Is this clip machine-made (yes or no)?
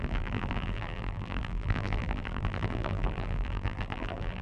yes